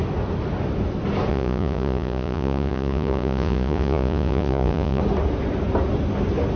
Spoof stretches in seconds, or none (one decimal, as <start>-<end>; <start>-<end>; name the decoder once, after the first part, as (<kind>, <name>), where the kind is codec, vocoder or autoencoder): 1.3-5.0 (vocoder, Vocos)